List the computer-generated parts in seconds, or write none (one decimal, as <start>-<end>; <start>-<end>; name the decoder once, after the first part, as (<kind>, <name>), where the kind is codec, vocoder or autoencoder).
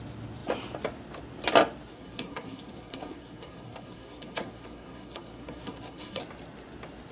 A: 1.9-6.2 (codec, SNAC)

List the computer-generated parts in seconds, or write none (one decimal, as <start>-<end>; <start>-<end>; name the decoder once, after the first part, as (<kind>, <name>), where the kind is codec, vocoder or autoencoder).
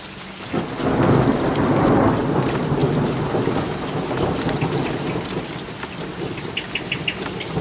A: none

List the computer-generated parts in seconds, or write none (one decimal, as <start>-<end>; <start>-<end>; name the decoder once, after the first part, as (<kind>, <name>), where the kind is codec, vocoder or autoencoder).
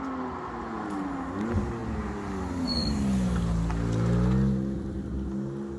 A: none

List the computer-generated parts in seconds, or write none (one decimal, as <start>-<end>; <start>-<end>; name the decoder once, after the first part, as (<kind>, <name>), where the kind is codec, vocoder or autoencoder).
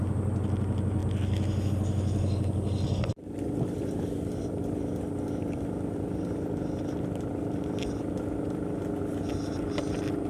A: none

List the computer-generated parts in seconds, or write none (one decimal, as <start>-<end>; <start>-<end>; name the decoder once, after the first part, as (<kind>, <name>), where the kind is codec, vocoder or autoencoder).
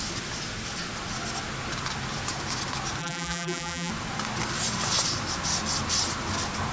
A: 3.0-3.9 (vocoder, BigVGAN v2)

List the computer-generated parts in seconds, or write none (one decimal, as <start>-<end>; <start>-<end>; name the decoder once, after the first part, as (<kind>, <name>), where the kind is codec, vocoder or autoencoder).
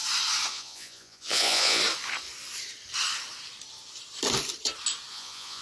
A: 0.5-1.8 (vocoder, Vocos); 5.1-5.6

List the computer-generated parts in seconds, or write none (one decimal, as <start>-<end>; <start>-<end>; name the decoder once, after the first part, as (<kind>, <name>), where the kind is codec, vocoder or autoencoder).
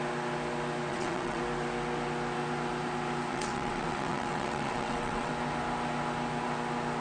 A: 0.9-1.4 (vocoder, WaveNeXt); 3.3-5.3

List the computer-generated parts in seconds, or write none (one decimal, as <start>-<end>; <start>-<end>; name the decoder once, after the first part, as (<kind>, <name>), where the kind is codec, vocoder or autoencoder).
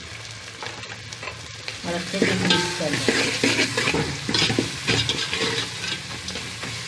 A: none